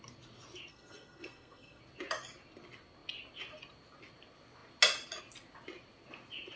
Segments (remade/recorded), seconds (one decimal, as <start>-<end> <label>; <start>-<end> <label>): 0.0-0.7 recorded; 0.7-1.8 remade; 1.8-6.6 recorded